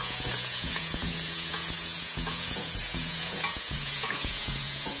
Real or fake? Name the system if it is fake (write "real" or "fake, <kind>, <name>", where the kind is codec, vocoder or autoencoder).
fake, vocoder, Vocos